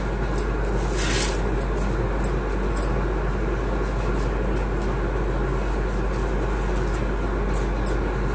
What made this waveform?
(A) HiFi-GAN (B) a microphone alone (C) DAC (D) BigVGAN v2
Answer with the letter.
B